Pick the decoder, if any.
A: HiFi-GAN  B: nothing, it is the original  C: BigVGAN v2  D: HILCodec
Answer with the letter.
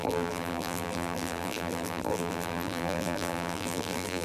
C